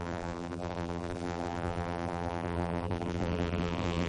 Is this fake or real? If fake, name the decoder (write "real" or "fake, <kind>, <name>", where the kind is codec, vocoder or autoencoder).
fake, vocoder, BigVGAN v2